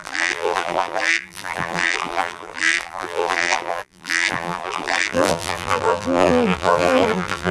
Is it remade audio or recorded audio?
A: remade